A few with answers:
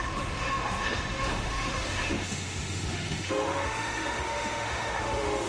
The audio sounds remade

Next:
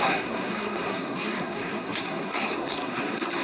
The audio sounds remade